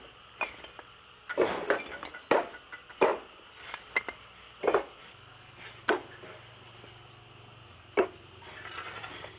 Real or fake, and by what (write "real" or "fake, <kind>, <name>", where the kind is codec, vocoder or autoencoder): real